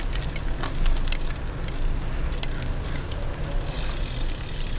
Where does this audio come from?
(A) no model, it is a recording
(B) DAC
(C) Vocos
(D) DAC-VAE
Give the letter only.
A